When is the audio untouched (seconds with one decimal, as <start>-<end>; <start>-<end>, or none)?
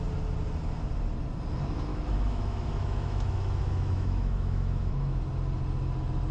0.0-1.9; 5.2-6.3